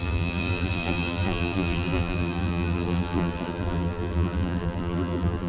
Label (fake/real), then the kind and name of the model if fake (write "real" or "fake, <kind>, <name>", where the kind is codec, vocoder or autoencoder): fake, vocoder, BigVGAN v2